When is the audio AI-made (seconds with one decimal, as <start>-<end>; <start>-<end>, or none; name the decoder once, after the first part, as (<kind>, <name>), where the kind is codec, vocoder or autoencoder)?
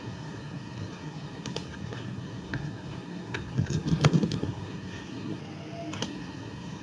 0.0-5.4 (codec, SNAC); 6.0-6.8